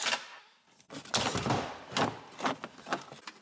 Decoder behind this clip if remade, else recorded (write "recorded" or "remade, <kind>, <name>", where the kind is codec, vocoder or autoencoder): recorded